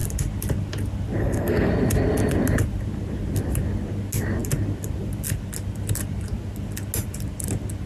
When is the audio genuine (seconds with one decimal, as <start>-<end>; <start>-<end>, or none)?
0.0-1.2; 1.7-7.9